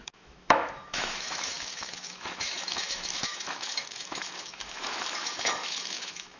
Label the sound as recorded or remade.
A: remade